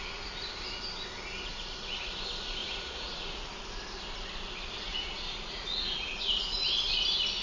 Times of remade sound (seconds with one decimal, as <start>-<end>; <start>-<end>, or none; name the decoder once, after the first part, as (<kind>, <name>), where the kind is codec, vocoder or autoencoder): 1.5-2.1 (vocoder, Vocos); 2.6-3.5; 4.9-6.3